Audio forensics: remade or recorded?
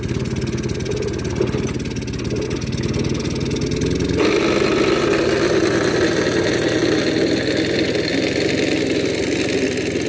recorded